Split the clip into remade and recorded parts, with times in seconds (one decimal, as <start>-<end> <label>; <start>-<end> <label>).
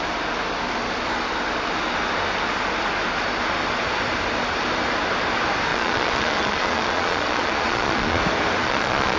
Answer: 0.0-5.7 recorded; 5.7-8.2 remade; 8.2-8.6 recorded; 8.6-9.2 remade